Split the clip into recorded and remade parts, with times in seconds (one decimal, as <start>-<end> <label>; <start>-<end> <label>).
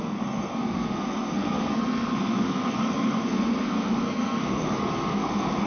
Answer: 0.0-5.7 remade